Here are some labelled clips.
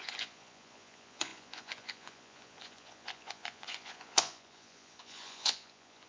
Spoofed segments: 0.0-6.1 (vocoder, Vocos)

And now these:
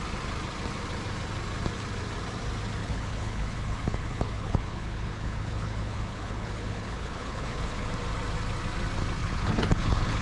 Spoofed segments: 2.8-7.9 (codec, HILCodec); 9.2-10.2